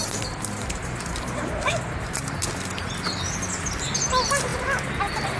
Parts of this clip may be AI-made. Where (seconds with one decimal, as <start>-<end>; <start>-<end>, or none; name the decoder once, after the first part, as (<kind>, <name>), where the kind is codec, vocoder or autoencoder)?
none